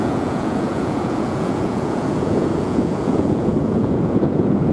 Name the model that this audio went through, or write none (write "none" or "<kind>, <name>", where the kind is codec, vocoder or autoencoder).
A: vocoder, Vocos